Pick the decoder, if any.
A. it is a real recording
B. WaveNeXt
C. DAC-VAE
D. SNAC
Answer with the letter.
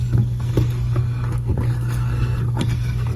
D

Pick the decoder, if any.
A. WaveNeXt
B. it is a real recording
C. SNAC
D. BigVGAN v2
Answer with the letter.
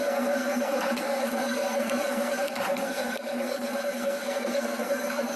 C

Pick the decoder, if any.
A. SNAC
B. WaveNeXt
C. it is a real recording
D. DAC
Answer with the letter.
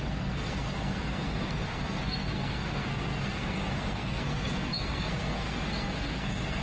A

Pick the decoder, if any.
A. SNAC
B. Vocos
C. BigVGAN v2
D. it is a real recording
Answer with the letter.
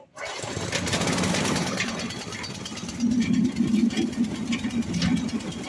D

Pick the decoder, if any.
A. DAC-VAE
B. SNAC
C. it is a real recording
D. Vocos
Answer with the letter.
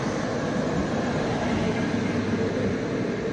C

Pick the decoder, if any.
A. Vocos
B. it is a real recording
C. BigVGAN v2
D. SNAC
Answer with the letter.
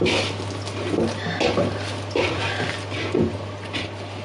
B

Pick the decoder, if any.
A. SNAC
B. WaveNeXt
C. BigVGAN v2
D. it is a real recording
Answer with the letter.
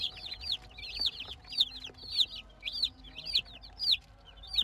D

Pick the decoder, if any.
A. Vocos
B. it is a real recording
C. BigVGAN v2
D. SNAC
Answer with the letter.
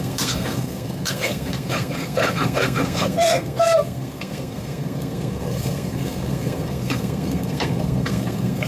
D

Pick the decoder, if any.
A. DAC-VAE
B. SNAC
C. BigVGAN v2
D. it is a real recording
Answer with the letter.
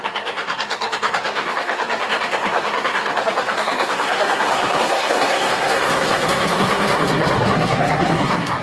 B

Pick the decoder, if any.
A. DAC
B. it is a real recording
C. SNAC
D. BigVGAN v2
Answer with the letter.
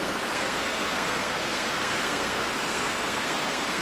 C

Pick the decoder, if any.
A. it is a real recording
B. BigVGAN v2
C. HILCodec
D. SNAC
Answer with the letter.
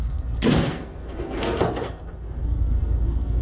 D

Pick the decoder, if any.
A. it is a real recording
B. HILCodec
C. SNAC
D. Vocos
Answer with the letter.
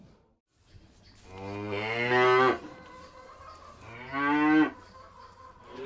A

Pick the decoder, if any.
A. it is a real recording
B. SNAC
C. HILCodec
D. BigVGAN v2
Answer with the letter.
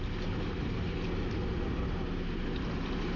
A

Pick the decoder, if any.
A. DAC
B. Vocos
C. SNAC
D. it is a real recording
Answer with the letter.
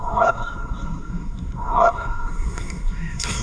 C